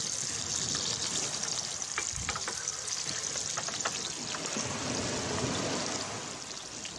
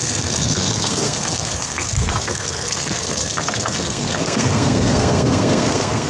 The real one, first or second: first